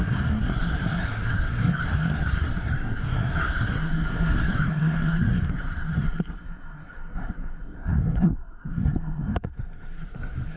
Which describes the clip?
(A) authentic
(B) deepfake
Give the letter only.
B